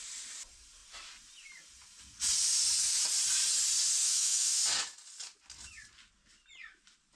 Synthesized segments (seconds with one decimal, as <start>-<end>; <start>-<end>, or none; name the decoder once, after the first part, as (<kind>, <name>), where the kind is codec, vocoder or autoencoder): 4.0-4.6 (autoencoder, DAC-VAE)